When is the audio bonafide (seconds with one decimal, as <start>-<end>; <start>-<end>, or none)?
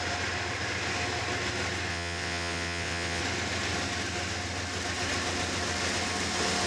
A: 0.0-1.9; 3.2-6.7